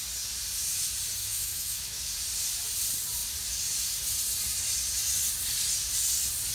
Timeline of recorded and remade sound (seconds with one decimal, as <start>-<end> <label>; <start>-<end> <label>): 0.0-1.2 recorded; 1.2-2.0 remade; 2.0-6.5 recorded